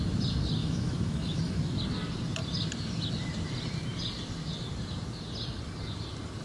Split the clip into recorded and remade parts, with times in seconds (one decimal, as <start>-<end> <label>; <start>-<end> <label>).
0.0-0.6 recorded; 0.6-1.6 remade; 1.6-6.4 recorded

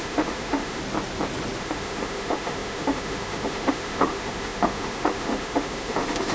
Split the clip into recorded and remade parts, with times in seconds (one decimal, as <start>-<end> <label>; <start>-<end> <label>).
0.0-0.8 remade; 0.8-1.6 recorded; 1.6-6.3 remade

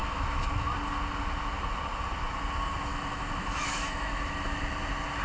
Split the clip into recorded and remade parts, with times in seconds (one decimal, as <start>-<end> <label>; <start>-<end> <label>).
0.0-0.7 remade; 0.7-2.9 recorded; 2.9-4.6 remade; 4.6-5.2 recorded

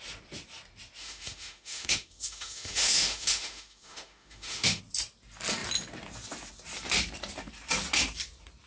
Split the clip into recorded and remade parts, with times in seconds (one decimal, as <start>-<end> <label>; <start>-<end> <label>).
0.0-1.0 recorded; 1.0-4.8 remade; 4.8-8.7 recorded

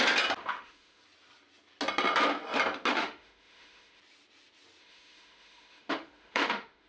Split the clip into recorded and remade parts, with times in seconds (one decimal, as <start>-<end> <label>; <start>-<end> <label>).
0.0-0.4 recorded; 0.4-1.0 remade; 1.0-2.9 recorded; 2.9-4.0 remade; 4.0-4.8 recorded; 4.8-6.9 remade

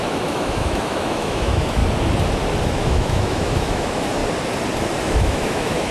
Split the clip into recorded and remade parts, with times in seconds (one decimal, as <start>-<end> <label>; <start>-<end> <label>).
0.0-1.8 remade; 1.8-2.6 recorded; 2.6-4.2 remade; 4.2-5.0 recorded; 5.0-5.9 remade

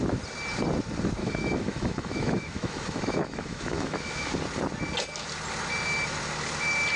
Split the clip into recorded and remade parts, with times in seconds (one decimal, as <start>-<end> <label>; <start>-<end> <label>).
0.0-1.2 recorded; 1.2-4.4 remade; 4.4-7.0 recorded

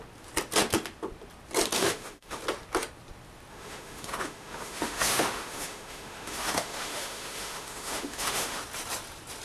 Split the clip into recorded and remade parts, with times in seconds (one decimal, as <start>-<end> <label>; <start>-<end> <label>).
0.0-1.8 recorded; 1.8-2.4 remade; 2.4-3.5 recorded; 3.5-8.6 remade; 8.6-9.4 recorded